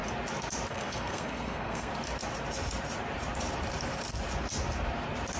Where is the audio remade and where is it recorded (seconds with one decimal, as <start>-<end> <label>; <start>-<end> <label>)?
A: 0.0-0.7 recorded; 0.7-1.9 remade; 1.9-5.4 recorded